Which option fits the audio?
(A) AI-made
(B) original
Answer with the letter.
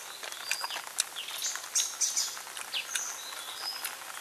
B